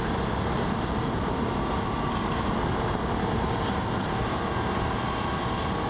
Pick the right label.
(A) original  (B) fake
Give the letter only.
A